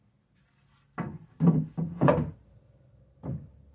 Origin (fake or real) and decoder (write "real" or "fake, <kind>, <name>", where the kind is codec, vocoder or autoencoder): real